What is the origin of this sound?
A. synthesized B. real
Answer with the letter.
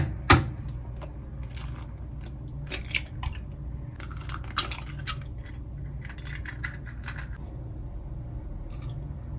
B